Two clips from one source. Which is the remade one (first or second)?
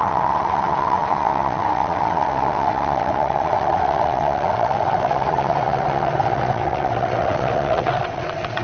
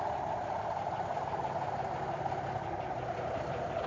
first